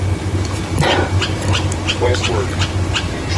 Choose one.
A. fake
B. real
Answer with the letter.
B